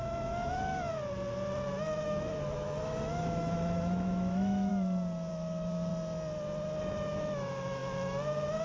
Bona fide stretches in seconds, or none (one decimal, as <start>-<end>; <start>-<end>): 0.9-1.8; 4.7-5.3; 5.9-6.8